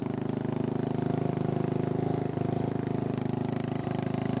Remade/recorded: recorded